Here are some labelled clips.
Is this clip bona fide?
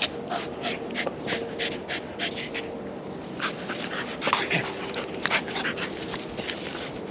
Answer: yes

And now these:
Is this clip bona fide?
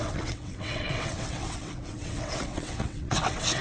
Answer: no